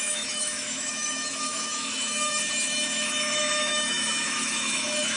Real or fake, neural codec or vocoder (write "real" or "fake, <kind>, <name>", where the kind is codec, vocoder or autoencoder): fake, autoencoder, DAC-VAE